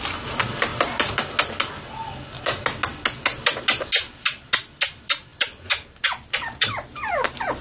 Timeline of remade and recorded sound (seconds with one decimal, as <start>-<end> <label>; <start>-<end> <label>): 0.0-5.3 recorded; 5.3-7.6 remade